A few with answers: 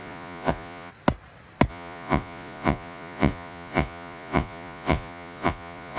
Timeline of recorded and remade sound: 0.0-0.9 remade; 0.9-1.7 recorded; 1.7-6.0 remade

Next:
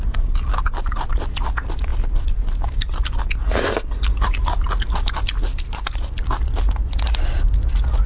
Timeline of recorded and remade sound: 0.0-1.9 recorded; 1.9-3.0 remade; 3.0-5.5 recorded; 5.5-6.4 remade; 6.4-8.1 recorded

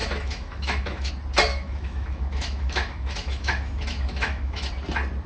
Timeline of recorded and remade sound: 0.0-1.1 remade; 1.1-1.5 recorded; 1.5-4.7 remade; 4.7-5.3 recorded

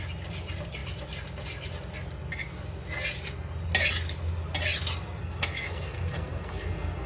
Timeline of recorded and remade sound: 0.0-5.2 recorded; 5.2-7.1 remade

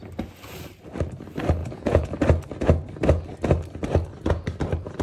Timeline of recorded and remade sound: 0.0-1.6 recorded; 1.6-2.1 remade; 2.1-5.0 recorded

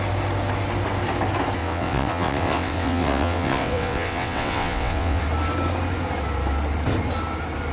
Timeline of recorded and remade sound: 0.0-1.6 recorded; 1.6-5.2 remade; 5.2-7.7 recorded